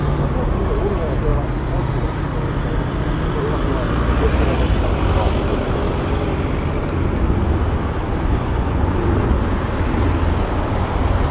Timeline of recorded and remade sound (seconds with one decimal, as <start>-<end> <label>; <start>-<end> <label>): 0.0-8.3 recorded; 8.3-9.0 remade; 9.0-11.3 recorded